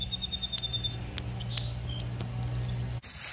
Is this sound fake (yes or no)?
no